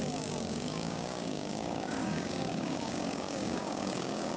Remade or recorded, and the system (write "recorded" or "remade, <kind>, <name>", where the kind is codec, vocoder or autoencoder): remade, codec, DAC